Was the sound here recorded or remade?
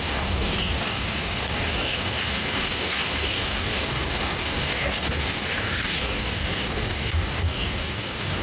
remade